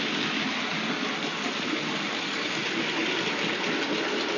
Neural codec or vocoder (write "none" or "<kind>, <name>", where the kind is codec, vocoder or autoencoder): none